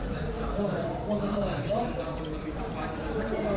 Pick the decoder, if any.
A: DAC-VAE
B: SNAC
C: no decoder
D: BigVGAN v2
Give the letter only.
D